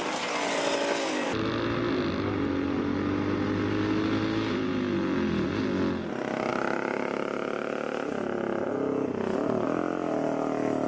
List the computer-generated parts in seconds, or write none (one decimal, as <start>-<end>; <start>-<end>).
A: none